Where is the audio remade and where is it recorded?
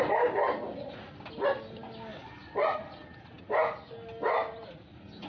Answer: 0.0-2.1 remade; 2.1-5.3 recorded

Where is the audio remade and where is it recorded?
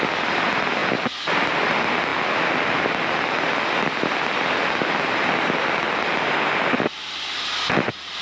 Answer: 0.0-2.1 remade; 2.1-6.7 recorded; 6.7-8.2 remade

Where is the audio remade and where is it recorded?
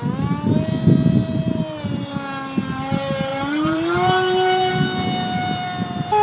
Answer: 0.0-1.2 recorded; 1.2-2.1 remade; 2.1-3.3 recorded; 3.3-4.7 remade; 4.7-6.2 recorded